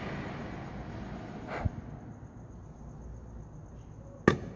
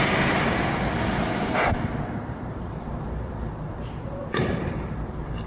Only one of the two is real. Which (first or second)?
first